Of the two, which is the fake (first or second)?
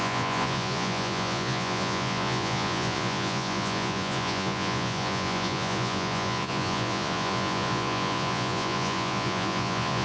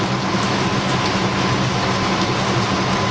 first